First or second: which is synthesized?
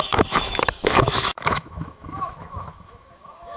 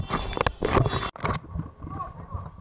first